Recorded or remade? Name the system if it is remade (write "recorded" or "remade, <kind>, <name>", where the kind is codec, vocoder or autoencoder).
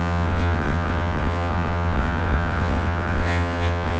remade, vocoder, WaveNeXt